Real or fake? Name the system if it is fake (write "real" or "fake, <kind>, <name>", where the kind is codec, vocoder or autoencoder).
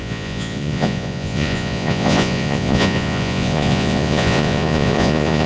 fake, vocoder, Vocos